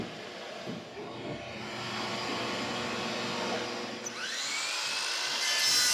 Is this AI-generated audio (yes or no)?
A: no